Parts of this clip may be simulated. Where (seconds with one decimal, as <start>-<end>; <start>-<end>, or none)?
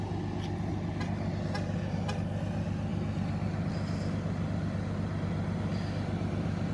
none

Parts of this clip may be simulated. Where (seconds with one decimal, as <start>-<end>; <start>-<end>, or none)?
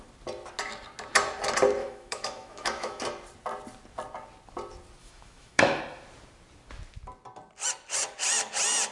1.8-3.0; 5.0-5.8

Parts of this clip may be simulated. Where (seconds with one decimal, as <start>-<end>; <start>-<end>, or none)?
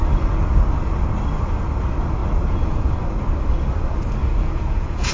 2.2-2.9; 4.2-5.1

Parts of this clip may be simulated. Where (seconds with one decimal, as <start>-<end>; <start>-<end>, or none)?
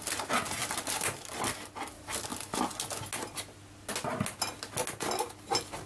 none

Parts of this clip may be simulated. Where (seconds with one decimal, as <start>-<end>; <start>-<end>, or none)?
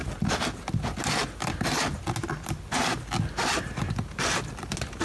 none